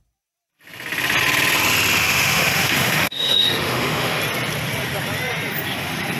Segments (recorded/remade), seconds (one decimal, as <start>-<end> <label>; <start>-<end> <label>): 0.0-2.0 recorded; 2.0-4.2 remade; 4.2-6.2 recorded